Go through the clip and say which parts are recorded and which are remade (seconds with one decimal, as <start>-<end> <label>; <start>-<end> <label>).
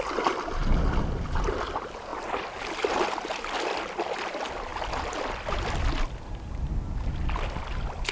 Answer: 0.0-8.1 recorded